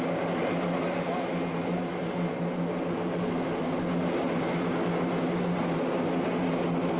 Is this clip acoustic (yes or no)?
yes